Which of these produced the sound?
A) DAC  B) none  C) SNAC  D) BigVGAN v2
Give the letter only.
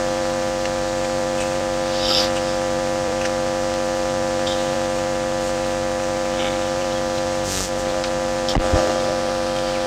D